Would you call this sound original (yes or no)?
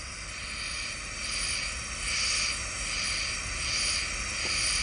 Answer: yes